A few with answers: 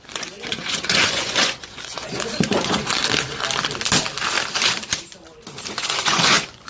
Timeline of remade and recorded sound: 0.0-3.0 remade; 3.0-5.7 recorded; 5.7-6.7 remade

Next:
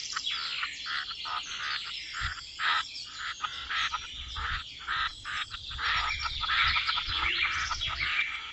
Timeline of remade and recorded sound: 0.0-1.9 recorded; 1.9-8.5 remade

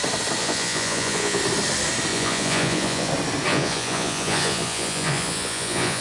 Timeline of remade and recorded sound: 0.0-0.4 recorded; 0.4-1.4 remade; 1.4-2.1 recorded; 2.1-3.1 remade; 3.1-3.5 recorded; 3.5-6.0 remade

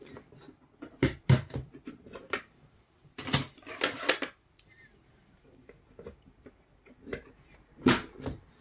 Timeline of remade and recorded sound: 0.0-8.6 recorded

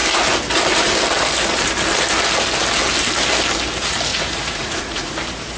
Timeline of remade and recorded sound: 0.0-4.1 recorded; 4.1-5.1 remade; 5.1-5.6 recorded